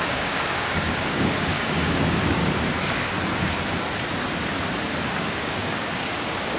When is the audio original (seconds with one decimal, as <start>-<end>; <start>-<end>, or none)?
2.4-5.0